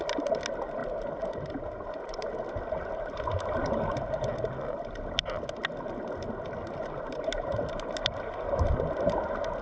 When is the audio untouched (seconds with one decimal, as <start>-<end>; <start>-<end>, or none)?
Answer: 0.0-9.6

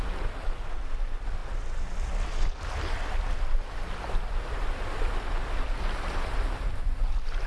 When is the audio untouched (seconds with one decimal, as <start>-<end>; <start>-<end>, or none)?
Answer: 0.0-7.5

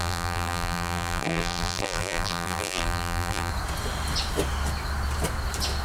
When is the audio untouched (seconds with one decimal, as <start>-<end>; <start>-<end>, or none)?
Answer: 3.5-5.8

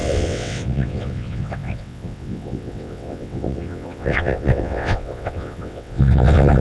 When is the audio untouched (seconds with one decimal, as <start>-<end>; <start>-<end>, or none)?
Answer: none

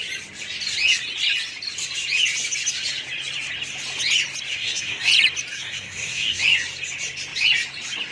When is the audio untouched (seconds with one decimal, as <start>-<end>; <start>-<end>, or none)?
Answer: 0.0-4.5; 5.1-5.5; 6.4-8.1

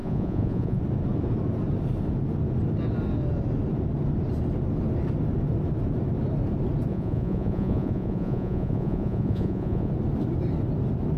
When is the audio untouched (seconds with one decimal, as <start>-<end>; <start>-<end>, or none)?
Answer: 0.8-6.9; 9.9-11.2

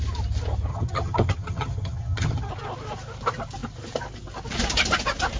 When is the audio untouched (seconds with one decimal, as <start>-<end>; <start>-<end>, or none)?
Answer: 0.0-0.7; 2.5-5.4

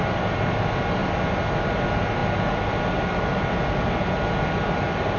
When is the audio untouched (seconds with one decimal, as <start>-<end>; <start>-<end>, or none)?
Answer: 0.0-5.2